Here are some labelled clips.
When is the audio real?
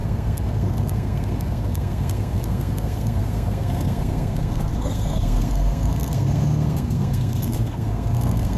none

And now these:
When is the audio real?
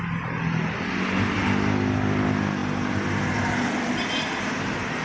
0.0-5.0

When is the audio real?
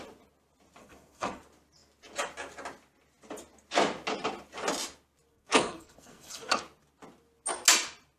0.0-0.8; 1.4-5.3; 6.6-8.2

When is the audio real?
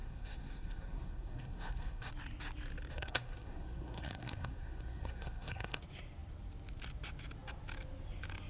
2.1-2.9; 5.8-8.5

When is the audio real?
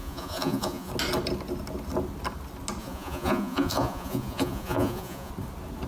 0.9-2.8; 5.3-5.9